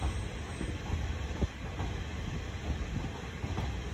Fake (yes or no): no